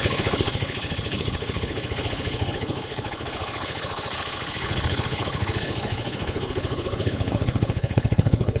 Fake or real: fake